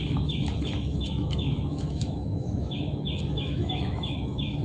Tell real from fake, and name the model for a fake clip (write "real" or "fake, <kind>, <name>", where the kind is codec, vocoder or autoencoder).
fake, autoencoder, DAC-VAE